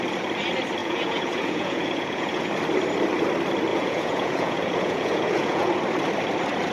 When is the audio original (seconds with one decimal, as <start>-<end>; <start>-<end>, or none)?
0.0-0.8; 2.5-3.7; 5.7-6.7